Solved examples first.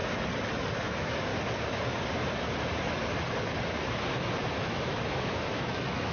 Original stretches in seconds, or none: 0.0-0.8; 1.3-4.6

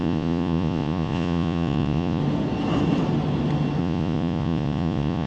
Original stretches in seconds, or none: 2.2-3.8

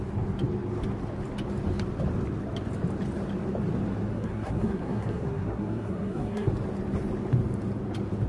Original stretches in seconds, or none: 0.0-4.1; 6.5-8.3

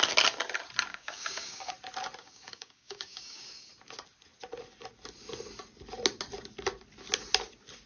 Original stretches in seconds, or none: 0.0-0.9; 1.7-2.2; 3.7-7.9

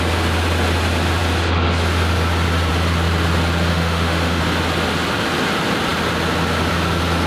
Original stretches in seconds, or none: 0.0-3.7; 4.4-7.3